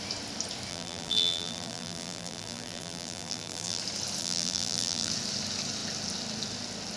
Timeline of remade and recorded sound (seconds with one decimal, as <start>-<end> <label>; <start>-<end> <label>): 0.0-0.7 recorded; 0.7-3.8 remade; 3.8-4.2 recorded; 4.2-5.1 remade; 5.1-7.0 recorded